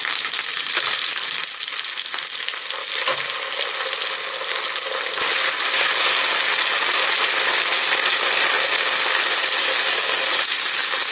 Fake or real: real